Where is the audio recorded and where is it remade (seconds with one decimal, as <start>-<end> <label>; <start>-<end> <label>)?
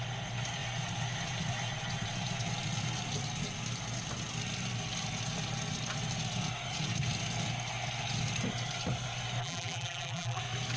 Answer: 0.0-9.4 recorded; 9.4-10.4 remade; 10.4-10.8 recorded